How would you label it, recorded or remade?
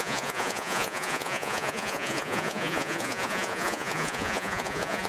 remade